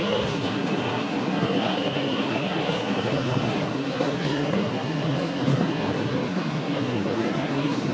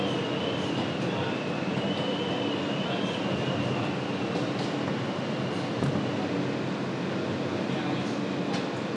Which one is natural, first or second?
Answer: second